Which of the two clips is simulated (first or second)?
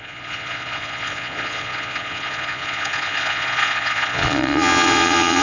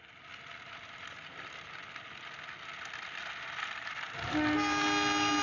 first